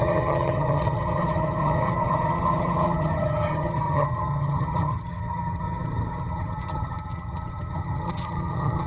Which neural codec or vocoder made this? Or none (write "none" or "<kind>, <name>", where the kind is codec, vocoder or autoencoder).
vocoder, HiFi-GAN